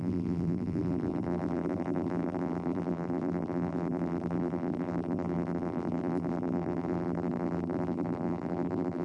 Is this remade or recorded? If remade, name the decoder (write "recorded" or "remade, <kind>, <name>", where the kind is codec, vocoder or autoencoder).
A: remade, vocoder, BigVGAN v2